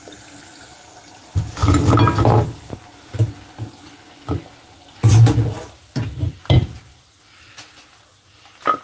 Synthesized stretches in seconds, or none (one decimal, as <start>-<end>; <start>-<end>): none

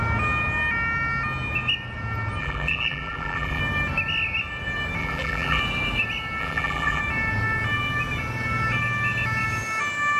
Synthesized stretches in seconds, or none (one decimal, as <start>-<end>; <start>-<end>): 2.4-3.6; 5.0-5.6; 6.4-7.0

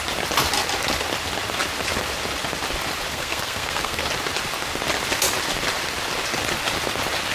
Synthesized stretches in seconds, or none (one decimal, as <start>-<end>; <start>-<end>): 3.1-4.0

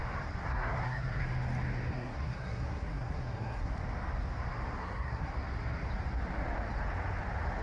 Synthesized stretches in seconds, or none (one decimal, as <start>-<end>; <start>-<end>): 0.4-1.2; 1.9-3.7; 4.8-5.3

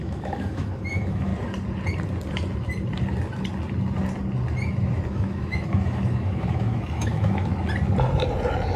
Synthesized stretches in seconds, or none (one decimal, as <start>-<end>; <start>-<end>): 0.0-1.3; 5.1-7.5

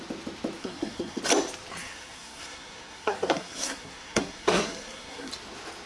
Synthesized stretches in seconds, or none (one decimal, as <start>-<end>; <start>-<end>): 0.6-1.2; 1.8-5.3